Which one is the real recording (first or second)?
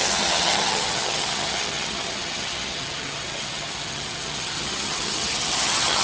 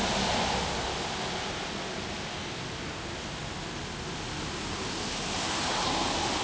second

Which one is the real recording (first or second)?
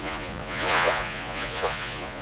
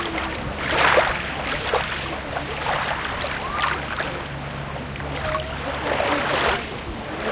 second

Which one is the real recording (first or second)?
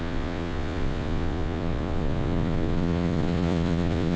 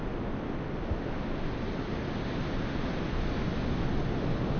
second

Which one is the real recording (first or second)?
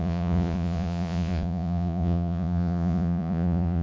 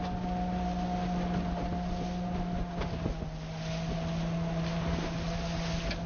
second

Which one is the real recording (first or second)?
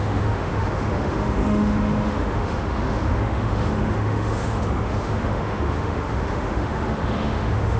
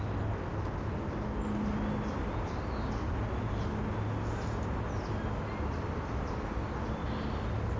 second